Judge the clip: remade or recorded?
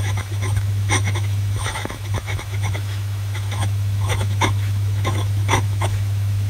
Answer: remade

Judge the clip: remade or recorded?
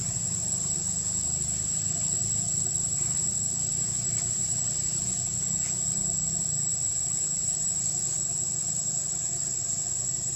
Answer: recorded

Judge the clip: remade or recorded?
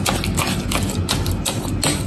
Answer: recorded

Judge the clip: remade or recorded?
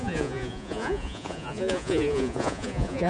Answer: remade